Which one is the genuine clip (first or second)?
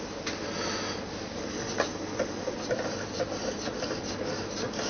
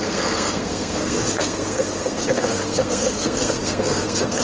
first